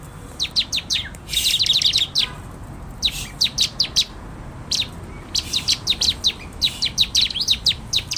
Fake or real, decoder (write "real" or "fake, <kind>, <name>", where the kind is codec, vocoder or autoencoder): fake, vocoder, BigVGAN v2